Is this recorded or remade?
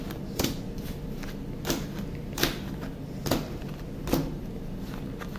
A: recorded